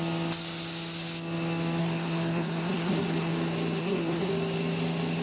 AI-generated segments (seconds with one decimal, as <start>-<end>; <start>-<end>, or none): 1.8-3.3; 3.8-4.3